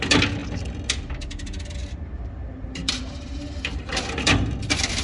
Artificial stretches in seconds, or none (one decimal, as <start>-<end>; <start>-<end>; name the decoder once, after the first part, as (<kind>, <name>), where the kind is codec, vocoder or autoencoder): 1.8-4.6 (vocoder, BigVGAN v2)